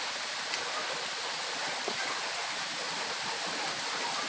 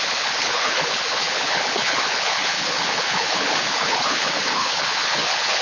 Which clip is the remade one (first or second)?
second